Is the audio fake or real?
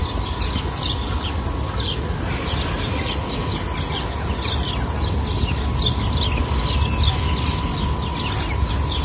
real